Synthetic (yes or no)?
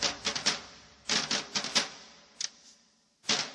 no